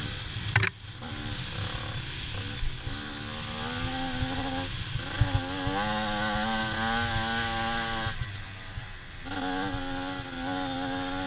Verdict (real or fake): real